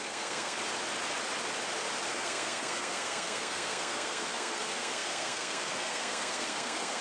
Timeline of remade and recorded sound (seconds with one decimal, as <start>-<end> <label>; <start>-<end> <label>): 0.0-0.6 remade; 0.6-2.1 recorded; 2.1-7.0 remade